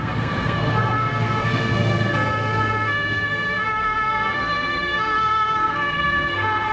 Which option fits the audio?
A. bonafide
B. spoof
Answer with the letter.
B